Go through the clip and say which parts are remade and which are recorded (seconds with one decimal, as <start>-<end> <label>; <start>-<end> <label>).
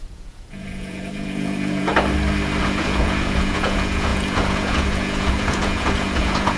0.0-1.9 remade; 1.9-2.6 recorded; 2.6-6.6 remade